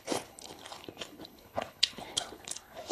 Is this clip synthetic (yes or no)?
yes